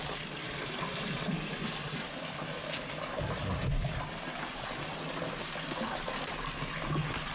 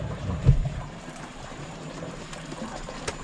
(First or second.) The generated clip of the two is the second